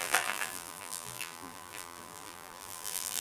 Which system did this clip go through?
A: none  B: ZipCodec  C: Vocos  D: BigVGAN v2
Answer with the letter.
D